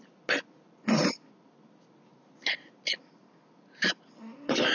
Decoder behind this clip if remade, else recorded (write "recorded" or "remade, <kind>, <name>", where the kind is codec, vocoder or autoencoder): recorded